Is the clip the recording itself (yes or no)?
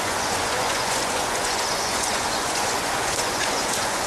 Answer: no